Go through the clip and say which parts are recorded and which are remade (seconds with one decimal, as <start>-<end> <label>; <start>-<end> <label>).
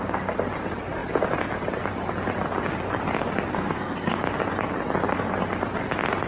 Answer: 0.0-3.5 recorded; 3.5-4.2 remade; 4.2-6.3 recorded